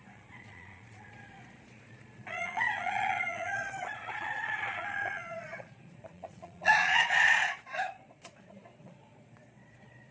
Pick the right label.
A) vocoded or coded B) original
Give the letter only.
A